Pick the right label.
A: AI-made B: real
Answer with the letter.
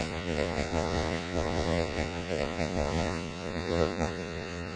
A